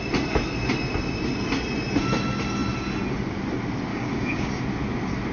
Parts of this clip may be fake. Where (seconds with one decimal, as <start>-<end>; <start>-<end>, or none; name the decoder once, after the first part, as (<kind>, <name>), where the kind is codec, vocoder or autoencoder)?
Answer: 3.9-4.5 (codec, DAC)